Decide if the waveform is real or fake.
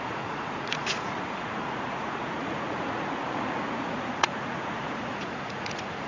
fake